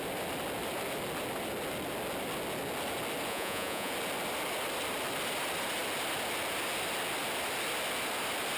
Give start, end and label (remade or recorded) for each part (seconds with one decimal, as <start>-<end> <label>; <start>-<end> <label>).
0.0-3.3 recorded; 3.3-3.9 remade; 3.9-8.6 recorded